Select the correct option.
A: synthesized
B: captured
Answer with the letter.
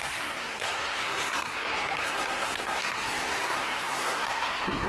A